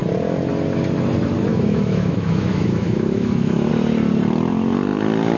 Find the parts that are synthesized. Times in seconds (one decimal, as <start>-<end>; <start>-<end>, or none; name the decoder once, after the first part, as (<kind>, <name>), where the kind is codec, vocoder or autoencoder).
1.5-3.7 (autoencoder, DAC-VAE)

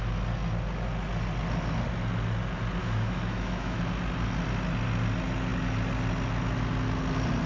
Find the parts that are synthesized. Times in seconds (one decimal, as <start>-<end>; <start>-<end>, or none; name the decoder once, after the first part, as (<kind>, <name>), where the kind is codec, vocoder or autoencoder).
2.8-3.8 (autoencoder, DAC-VAE)

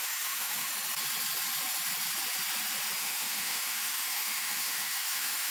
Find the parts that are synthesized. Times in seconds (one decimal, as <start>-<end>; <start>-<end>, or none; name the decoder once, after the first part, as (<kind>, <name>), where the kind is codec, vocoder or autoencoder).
0.0-0.7 (autoencoder, DAC-VAE); 3.0-5.5

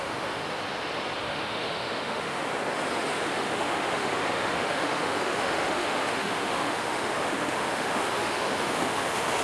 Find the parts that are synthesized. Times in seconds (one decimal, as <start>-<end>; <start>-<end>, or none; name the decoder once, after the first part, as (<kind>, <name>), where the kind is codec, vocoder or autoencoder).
0.0-0.4 (autoencoder, DAC-VAE); 1.2-2.4; 3.2-9.4

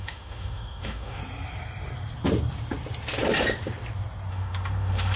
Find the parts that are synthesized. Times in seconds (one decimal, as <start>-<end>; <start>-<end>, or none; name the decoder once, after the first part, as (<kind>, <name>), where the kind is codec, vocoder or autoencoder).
0.0-1.2 (autoencoder, DAC-VAE); 4.3-5.2

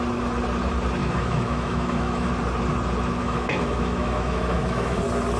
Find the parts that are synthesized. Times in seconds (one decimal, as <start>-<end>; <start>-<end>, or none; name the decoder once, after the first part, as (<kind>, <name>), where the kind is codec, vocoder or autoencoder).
1.0-2.3 (autoencoder, DAC-VAE); 3.2-5.0

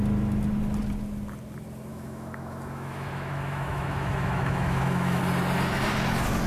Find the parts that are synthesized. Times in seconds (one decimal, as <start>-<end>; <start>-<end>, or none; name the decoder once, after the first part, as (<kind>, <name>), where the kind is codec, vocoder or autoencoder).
1.9-5.2 (autoencoder, DAC-VAE)